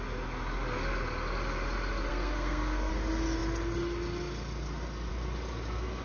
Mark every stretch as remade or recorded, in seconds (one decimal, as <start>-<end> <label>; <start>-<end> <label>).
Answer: 0.0-2.1 recorded; 2.1-2.9 remade; 2.9-6.0 recorded